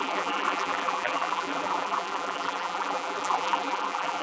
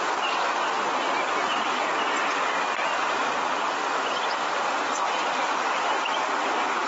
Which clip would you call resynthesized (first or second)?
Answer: first